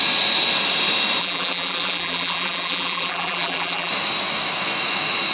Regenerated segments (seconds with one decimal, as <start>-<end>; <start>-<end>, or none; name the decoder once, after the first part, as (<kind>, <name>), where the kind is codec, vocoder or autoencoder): 1.2-3.9 (vocoder, BigVGAN v2)